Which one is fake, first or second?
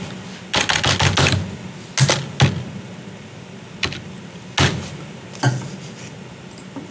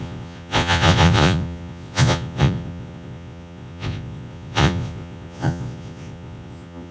second